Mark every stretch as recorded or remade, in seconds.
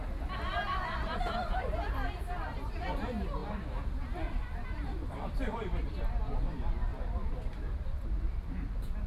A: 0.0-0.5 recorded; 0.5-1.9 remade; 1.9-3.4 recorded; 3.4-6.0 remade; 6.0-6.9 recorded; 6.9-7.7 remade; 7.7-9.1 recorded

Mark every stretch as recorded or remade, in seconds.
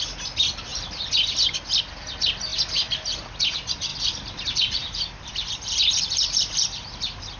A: 0.0-3.9 recorded; 3.9-7.4 remade